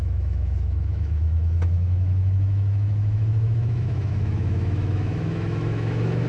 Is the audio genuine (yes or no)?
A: no